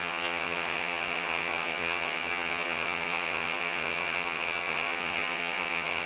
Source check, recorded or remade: remade